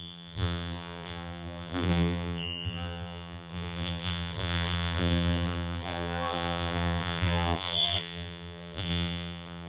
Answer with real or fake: fake